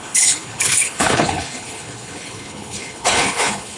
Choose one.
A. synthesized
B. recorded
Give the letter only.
A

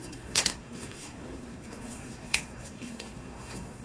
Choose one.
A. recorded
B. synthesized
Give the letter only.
B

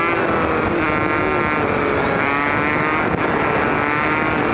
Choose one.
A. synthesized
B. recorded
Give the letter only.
B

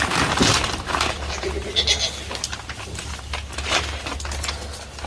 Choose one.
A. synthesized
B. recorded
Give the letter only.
B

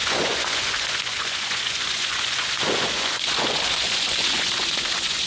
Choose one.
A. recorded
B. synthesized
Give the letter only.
B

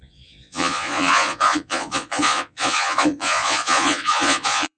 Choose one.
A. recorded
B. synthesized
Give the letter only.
B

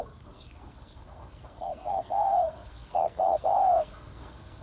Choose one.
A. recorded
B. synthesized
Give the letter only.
B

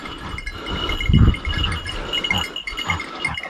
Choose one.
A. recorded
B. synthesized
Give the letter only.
A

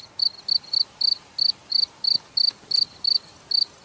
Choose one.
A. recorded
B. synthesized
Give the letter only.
A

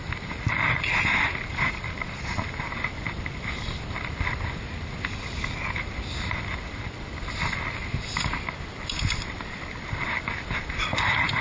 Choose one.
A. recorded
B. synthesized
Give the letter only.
A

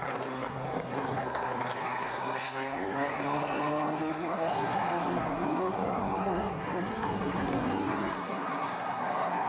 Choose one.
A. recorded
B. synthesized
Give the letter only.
B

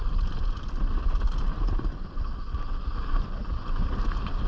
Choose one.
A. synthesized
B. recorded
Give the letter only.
B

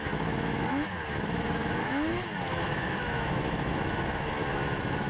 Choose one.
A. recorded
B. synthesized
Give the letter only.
B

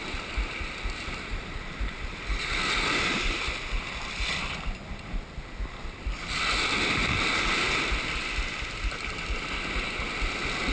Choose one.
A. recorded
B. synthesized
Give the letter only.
A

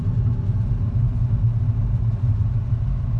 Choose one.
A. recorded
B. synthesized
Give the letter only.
A